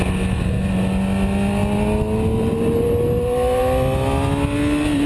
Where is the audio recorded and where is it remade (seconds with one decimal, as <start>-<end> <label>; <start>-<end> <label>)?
0.0-5.1 recorded